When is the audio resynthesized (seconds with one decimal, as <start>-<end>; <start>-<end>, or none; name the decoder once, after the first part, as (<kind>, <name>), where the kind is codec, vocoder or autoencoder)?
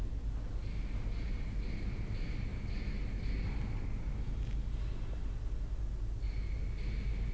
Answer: none